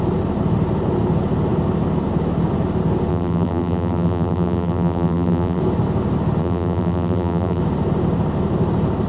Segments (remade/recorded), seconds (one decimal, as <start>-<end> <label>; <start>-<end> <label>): 0.0-3.1 recorded; 3.1-5.6 remade; 5.6-6.4 recorded; 6.4-7.6 remade; 7.6-9.1 recorded